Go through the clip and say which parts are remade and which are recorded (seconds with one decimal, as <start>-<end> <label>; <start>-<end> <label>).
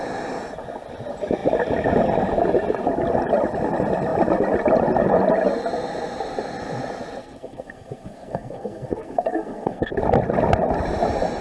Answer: 0.0-7.2 recorded; 7.2-9.9 remade; 9.9-11.4 recorded